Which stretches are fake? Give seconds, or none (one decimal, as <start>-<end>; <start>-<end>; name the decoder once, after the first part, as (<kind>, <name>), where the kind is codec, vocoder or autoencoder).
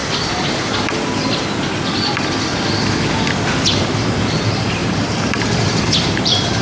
3.8-6.6 (vocoder, BigVGAN v2)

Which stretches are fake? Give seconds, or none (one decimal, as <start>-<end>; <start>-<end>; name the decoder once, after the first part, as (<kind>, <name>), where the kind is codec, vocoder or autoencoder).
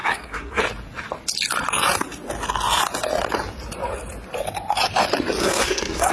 0.0-0.6 (codec, SNAC); 5.4-6.1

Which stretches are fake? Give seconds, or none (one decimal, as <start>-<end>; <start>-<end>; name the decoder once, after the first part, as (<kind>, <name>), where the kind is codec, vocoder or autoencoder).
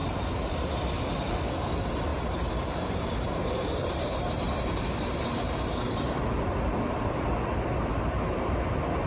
0.0-0.5 (vocoder, BigVGAN v2); 2.1-7.2; 7.9-8.5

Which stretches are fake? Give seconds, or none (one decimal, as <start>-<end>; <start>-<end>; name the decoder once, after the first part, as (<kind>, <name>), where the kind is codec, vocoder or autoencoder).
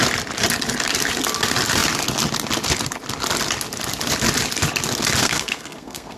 5.2-6.2 (codec, SNAC)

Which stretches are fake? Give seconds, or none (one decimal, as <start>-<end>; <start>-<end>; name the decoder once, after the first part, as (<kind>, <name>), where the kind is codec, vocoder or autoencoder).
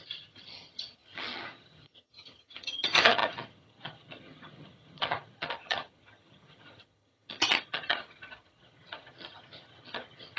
0.0-10.4 (vocoder, HiFi-GAN)